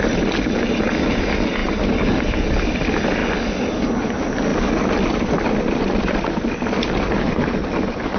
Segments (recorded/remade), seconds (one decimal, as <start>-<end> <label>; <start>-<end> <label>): 0.0-8.2 recorded